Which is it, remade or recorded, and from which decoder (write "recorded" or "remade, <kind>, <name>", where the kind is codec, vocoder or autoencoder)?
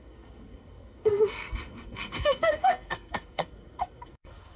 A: remade, codec, SNAC